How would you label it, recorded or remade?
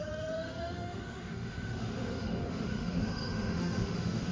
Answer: remade